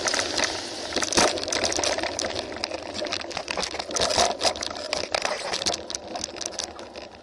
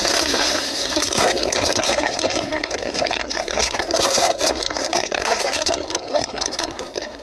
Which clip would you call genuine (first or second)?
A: first